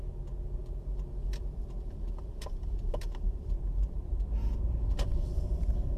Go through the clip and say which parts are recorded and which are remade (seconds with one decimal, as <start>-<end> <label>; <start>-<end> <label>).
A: 0.0-0.6 recorded; 0.6-4.2 remade; 4.2-5.1 recorded; 5.1-6.0 remade